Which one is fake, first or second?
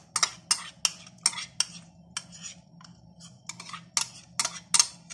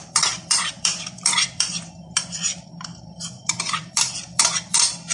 second